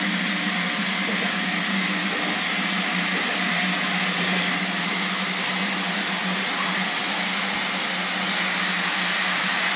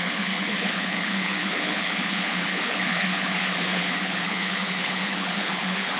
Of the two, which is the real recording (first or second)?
first